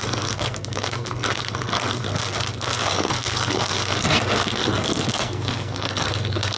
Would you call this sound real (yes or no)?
no